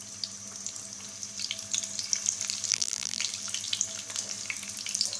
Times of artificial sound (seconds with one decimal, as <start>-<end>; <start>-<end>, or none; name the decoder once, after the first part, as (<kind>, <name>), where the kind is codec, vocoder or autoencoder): 2.7-3.2 (vocoder, BigVGAN v2)

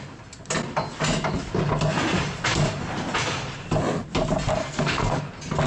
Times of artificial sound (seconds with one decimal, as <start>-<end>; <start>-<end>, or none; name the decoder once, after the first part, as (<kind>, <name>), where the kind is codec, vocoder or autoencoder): 4.6-5.2 (codec, SNAC)

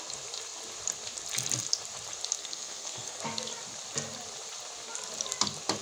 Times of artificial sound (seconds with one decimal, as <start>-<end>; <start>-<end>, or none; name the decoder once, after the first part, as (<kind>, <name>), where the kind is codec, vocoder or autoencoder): 2.4-3.2 (codec, SNAC)